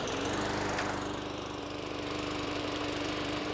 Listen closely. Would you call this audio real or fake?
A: fake